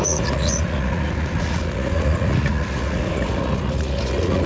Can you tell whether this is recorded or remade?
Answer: remade